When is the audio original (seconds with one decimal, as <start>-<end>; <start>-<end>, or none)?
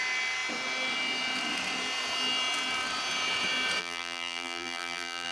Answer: 0.0-3.8